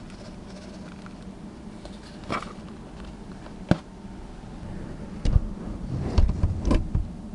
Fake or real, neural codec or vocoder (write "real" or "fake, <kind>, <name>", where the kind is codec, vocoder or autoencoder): real